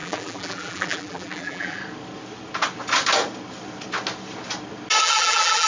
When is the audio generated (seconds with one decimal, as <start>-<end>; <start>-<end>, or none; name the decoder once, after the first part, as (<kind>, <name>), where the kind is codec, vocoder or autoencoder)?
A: 0.0-1.8 (vocoder, BigVGAN v2); 5.0-5.7